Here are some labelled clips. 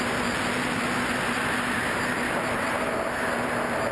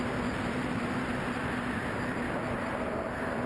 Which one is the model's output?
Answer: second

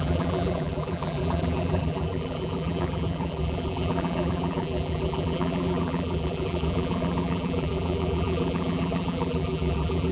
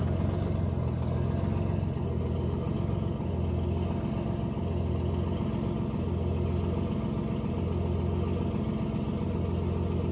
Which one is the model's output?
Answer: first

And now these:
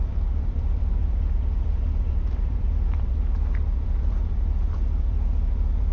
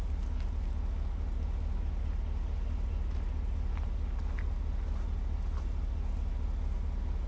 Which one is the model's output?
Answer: first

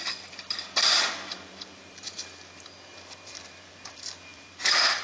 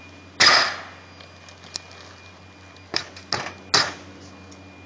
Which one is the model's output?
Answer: first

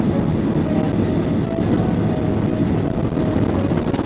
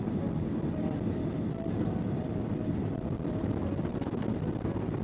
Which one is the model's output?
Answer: second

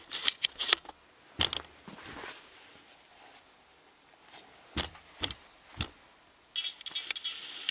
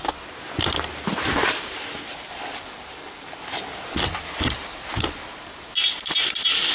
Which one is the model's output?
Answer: second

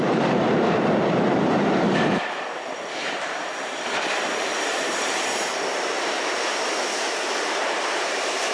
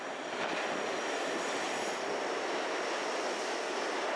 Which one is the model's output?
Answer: first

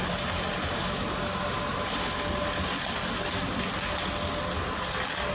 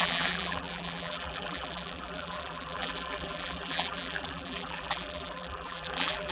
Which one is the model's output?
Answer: second